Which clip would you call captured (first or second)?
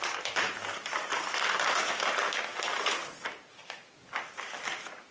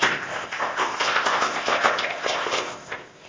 first